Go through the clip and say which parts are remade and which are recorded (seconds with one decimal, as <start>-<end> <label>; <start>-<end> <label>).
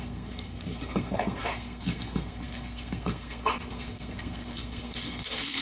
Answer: 0.0-5.6 remade